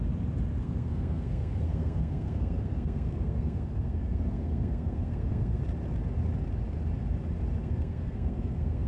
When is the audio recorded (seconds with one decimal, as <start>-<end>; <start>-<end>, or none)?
0.0-0.6; 5.6-7.6